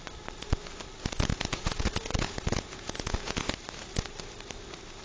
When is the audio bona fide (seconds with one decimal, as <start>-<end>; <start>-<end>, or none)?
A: 0.0-1.3; 3.5-5.0